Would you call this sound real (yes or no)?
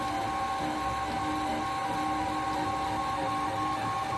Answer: yes